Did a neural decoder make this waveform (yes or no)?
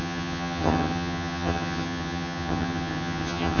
yes